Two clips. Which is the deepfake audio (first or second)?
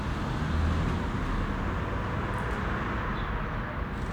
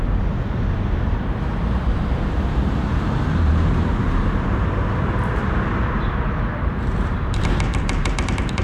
second